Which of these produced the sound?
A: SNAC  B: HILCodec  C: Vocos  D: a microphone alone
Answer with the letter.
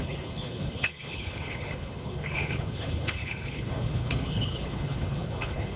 B